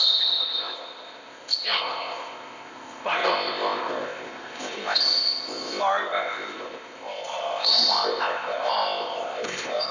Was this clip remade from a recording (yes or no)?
yes